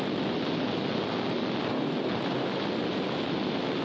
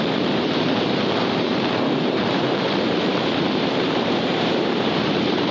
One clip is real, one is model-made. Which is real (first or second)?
first